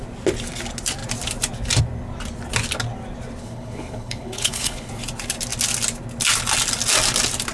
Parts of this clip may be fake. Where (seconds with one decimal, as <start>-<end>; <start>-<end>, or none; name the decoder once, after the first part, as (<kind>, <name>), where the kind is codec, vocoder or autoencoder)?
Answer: 3.4-4.9 (codec, HILCodec)